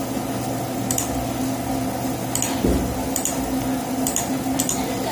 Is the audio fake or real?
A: real